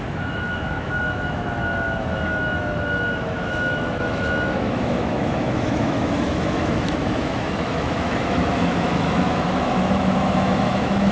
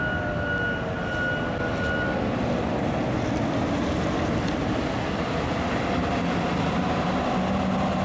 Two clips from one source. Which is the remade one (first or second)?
first